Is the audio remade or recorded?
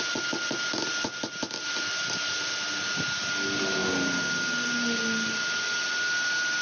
recorded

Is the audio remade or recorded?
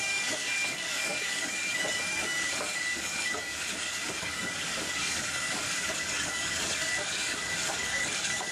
remade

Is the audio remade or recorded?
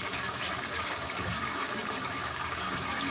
remade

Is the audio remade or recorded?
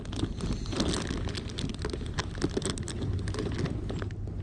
recorded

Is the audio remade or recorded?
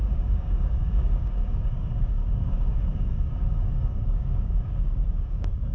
remade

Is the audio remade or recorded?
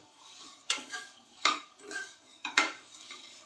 remade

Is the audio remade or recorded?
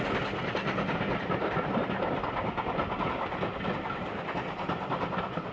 recorded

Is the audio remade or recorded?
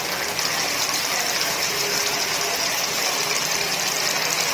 recorded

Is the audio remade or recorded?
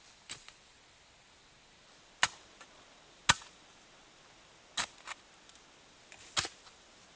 recorded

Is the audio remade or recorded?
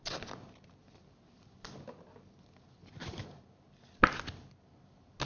recorded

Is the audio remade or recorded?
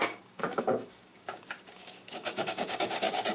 remade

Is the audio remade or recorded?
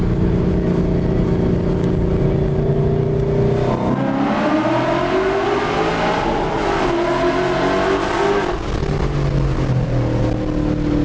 recorded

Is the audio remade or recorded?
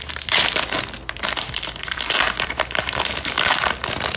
recorded